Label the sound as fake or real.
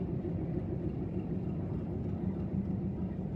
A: real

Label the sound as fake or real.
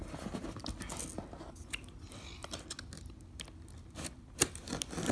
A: real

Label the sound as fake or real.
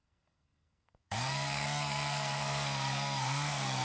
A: fake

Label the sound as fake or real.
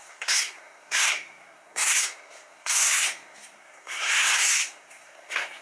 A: fake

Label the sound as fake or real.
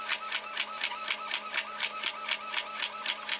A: real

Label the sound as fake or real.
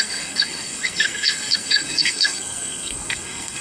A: fake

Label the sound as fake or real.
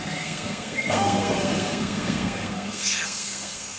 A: fake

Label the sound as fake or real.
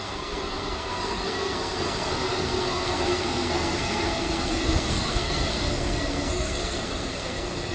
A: fake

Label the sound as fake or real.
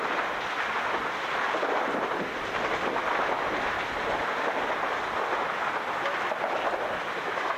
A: real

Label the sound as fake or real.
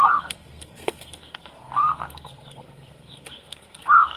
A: fake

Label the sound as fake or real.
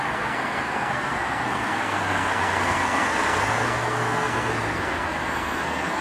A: fake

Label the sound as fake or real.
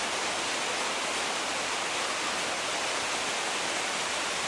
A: real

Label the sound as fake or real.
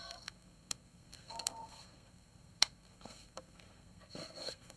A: fake